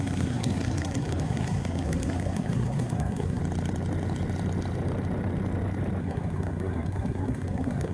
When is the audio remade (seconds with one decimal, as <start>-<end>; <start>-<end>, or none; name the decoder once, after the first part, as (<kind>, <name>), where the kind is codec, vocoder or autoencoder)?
0.0-3.4 (codec, SNAC); 6.0-7.9